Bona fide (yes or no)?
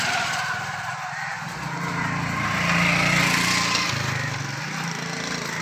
yes